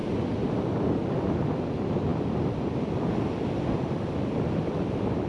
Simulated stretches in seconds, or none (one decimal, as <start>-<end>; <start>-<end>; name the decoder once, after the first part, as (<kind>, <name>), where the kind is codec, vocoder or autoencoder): none